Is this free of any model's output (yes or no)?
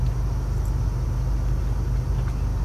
yes